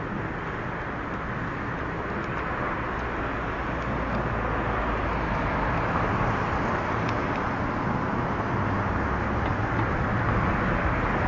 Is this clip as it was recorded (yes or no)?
yes